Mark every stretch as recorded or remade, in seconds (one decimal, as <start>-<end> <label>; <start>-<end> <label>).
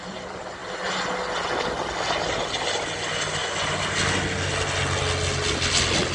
0.0-6.1 recorded